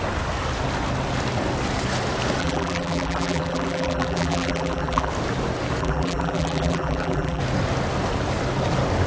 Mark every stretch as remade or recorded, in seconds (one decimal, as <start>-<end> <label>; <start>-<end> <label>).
0.0-2.4 recorded; 2.4-5.1 remade; 5.1-5.8 recorded; 5.8-7.4 remade; 7.4-9.1 recorded

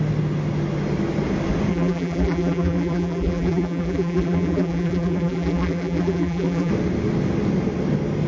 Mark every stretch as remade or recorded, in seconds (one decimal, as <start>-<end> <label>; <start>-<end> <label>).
0.0-1.7 recorded; 1.7-6.7 remade; 6.7-8.3 recorded

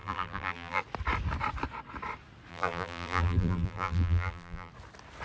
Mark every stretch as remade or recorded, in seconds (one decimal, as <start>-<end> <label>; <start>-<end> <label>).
0.0-0.8 remade; 0.8-2.5 recorded; 2.5-4.7 remade; 4.7-5.2 recorded

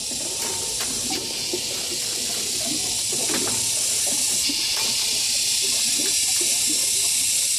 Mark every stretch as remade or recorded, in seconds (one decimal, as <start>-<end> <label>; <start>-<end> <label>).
0.0-0.6 remade; 0.6-7.6 recorded

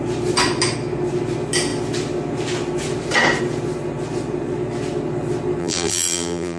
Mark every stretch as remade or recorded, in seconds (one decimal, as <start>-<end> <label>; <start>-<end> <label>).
0.0-5.6 recorded; 5.6-6.6 remade